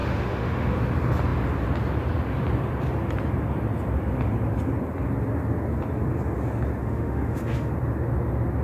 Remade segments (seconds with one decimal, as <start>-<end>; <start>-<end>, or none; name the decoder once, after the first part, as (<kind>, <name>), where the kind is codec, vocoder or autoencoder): 0.0-0.8 (autoencoder, DAC-VAE); 6.8-7.7